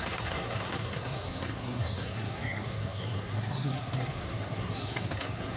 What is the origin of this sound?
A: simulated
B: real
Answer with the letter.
A